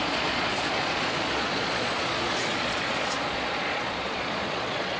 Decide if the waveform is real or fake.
fake